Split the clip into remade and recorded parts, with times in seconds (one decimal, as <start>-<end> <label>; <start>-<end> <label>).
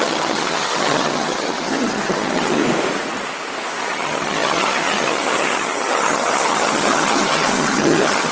0.0-2.6 remade; 2.6-3.8 recorded; 3.8-8.3 remade